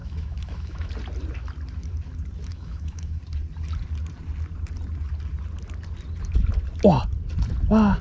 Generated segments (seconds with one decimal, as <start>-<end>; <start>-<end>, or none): 0.0-0.9; 2.5-3.2